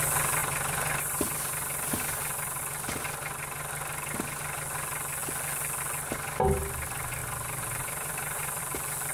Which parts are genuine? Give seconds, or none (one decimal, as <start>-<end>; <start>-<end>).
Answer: 0.0-0.4; 2.6-7.2; 8.6-9.1